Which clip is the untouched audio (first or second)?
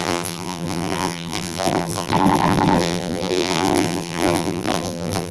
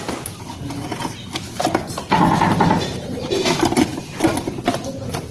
second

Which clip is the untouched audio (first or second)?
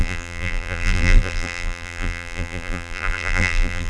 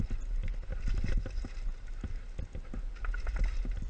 second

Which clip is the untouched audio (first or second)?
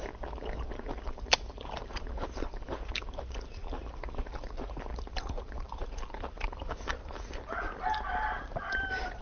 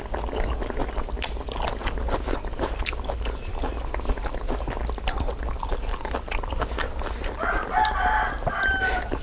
second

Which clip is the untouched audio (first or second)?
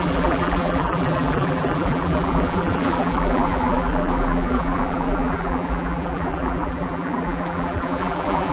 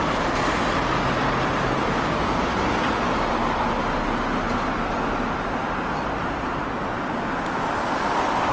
second